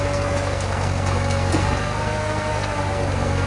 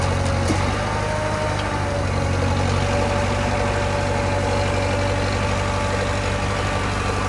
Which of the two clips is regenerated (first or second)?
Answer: first